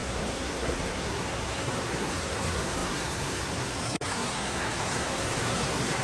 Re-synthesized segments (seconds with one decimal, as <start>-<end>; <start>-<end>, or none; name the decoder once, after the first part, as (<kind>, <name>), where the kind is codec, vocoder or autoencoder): 0.0-6.0 (codec, SNAC)